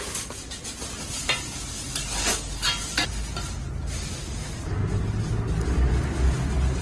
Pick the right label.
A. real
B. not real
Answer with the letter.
A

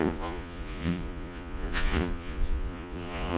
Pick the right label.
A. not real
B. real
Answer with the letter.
A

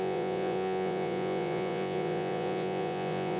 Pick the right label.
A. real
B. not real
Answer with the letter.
B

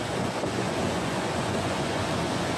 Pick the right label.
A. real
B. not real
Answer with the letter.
B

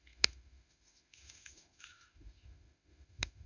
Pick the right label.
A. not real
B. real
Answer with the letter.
A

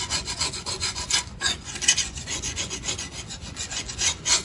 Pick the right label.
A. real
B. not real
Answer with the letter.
B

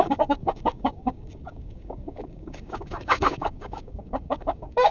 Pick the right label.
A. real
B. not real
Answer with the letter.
B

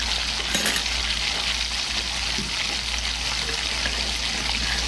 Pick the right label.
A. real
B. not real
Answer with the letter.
A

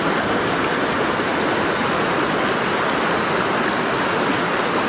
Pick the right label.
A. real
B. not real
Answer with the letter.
A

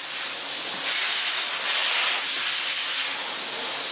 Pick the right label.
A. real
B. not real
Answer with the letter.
A